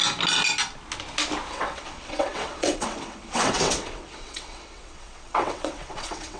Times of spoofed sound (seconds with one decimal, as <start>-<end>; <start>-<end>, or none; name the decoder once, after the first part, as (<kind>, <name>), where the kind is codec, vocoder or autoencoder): 1.5-6.4 (vocoder, WaveNeXt)